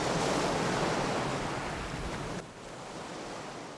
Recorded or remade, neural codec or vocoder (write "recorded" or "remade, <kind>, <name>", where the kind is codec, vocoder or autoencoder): recorded